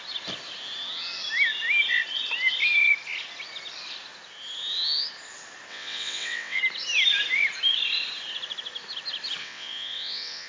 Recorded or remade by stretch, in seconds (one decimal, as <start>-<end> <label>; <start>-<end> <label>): 0.0-5.7 recorded; 5.7-6.6 remade; 6.6-9.4 recorded; 9.4-10.5 remade